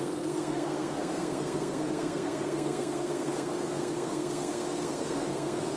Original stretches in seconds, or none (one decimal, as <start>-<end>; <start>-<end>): none